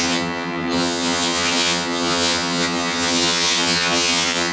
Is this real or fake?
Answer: fake